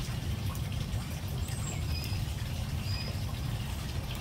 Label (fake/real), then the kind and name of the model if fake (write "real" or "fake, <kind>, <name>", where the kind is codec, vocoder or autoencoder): fake, vocoder, BigVGAN v2